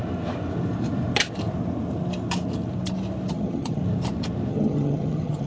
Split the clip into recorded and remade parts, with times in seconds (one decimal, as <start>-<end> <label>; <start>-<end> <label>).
0.0-3.3 recorded; 3.3-3.8 remade; 3.8-4.5 recorded; 4.5-5.5 remade